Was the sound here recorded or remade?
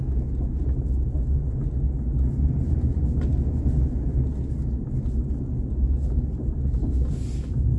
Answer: recorded